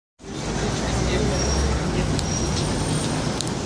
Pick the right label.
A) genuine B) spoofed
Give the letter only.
A